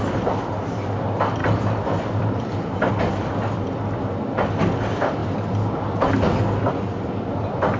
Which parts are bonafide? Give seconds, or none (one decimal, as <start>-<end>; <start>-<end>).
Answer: 0.0-1.4; 2.9-7.8